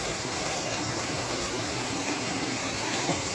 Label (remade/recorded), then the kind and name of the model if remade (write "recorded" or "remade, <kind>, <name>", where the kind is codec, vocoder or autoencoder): remade, codec, SNAC